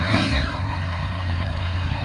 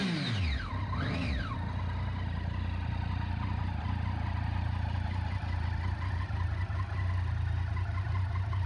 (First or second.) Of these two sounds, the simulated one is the first